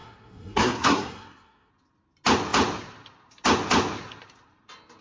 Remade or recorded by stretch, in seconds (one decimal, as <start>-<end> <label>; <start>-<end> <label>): 0.0-1.7 remade; 1.7-5.0 recorded